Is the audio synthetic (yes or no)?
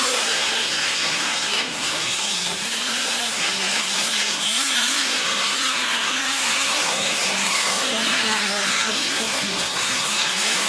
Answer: yes